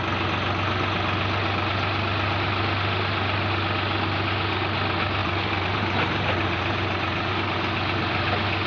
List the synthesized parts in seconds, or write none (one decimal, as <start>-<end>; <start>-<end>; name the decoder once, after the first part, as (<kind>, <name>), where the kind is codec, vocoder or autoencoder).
5.2-7.3 (vocoder, BigVGAN v2)